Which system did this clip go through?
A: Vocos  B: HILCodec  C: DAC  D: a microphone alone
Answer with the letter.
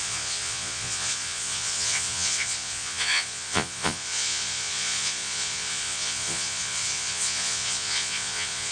A